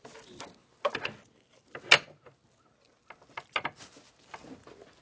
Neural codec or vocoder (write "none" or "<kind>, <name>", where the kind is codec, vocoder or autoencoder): none